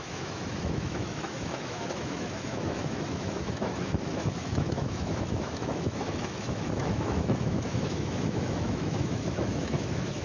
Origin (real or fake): fake